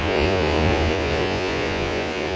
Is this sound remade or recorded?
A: remade